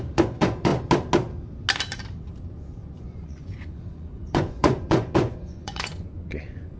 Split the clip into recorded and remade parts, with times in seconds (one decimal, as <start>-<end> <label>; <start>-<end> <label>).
0.0-0.7 remade; 0.7-2.5 recorded; 2.5-6.8 remade